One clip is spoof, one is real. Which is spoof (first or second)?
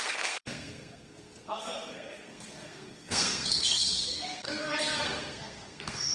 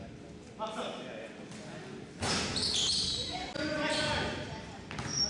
first